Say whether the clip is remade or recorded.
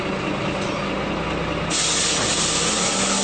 recorded